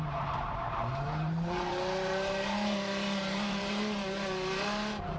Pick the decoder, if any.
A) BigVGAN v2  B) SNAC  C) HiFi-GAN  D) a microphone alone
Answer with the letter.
A